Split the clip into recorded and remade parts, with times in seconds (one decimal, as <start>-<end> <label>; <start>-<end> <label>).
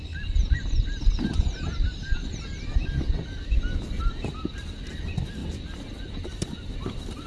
0.0-7.3 recorded